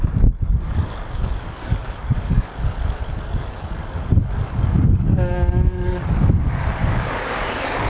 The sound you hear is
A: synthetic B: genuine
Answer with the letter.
A